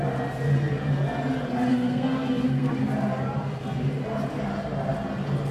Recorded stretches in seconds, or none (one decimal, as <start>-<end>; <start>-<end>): 0.0-1.7; 2.7-5.5